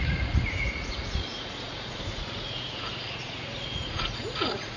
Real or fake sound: fake